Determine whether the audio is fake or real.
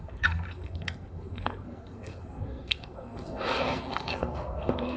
fake